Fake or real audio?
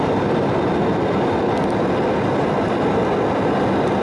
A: real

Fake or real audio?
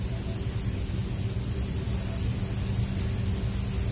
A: real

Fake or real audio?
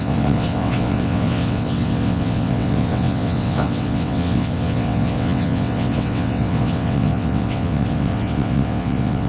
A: fake